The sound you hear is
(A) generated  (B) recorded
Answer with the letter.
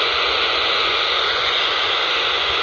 A